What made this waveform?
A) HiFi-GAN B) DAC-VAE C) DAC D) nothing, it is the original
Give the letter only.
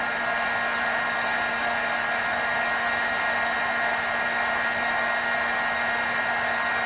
D